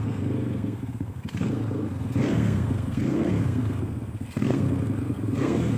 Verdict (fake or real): fake